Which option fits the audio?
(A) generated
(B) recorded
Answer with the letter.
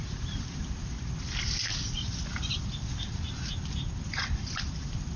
B